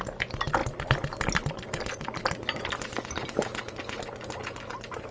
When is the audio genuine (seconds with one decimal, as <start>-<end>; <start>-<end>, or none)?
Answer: 0.0-5.1